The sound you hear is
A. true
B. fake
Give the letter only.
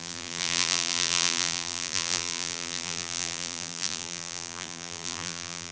B